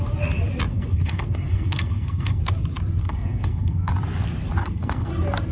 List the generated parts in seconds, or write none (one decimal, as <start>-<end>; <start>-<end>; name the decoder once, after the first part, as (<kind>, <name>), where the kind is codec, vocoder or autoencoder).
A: 0.7-2.4 (codec, SNAC); 3.0-3.9; 4.6-5.1